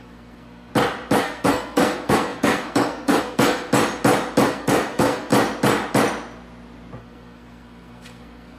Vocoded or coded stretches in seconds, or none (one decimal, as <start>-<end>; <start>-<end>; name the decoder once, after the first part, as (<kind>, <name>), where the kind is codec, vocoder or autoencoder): 0.0-0.7 (codec, SNAC); 1.2-3.7; 4.5-5.3; 7.0-8.6